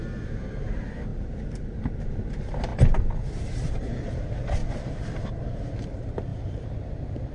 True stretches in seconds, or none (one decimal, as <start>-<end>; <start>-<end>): 2.7-3.3; 6.3-7.3